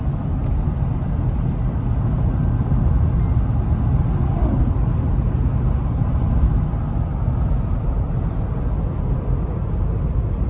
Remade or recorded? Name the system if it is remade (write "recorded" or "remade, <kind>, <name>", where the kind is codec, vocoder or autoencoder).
recorded